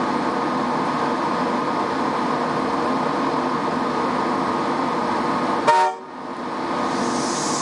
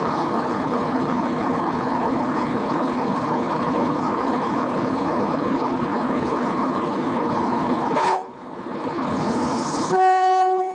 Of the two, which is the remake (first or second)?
second